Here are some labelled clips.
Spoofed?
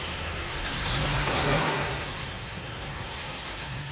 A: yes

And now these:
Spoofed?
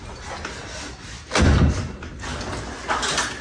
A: no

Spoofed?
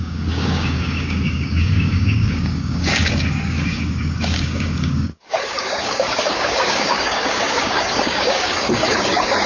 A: yes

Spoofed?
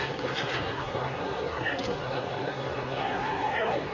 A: yes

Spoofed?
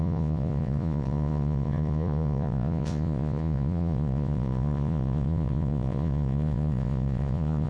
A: yes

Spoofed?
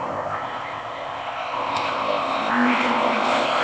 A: yes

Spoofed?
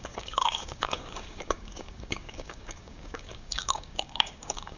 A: yes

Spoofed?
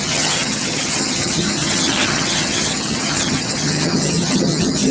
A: yes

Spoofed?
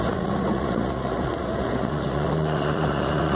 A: yes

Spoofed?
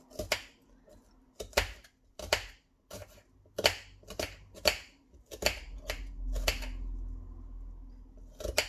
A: no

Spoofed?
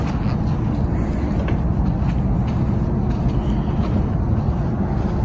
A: no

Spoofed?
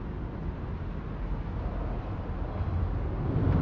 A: no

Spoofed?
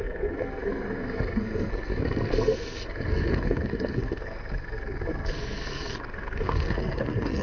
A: yes